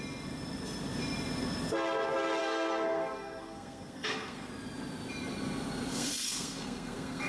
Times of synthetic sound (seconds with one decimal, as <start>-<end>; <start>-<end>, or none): 2.4-4.5; 5.9-7.3